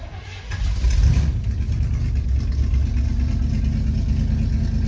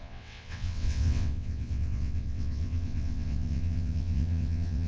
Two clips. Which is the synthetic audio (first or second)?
second